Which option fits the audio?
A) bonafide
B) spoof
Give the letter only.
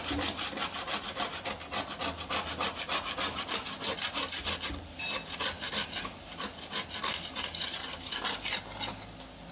A